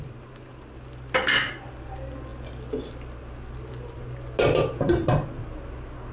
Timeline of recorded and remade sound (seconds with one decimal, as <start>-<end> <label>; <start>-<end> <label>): 0.0-6.1 recorded